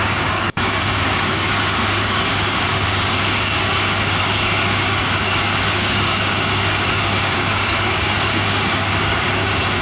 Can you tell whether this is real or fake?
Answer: fake